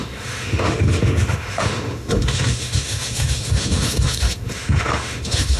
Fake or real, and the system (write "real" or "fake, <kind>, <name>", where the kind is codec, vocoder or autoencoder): fake, autoencoder, DAC-VAE